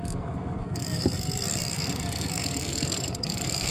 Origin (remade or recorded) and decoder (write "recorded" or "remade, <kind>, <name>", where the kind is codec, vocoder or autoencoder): remade, codec, SNAC